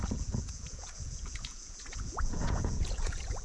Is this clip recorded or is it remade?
remade